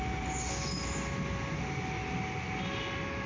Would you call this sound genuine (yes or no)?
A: yes